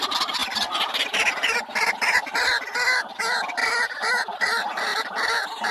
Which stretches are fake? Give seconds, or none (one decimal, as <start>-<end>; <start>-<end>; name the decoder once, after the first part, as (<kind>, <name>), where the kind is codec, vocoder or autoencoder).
none